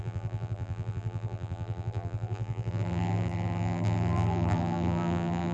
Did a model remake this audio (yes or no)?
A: yes